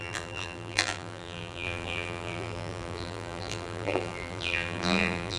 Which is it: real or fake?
fake